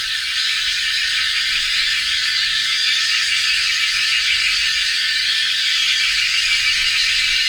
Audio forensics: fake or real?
fake